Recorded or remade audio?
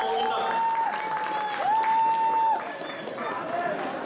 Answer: recorded